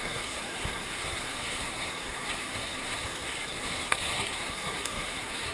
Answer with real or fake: fake